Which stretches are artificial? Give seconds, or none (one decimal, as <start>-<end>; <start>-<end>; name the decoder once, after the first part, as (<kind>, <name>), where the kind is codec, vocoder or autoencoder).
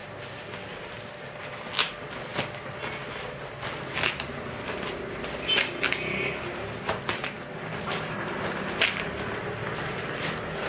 none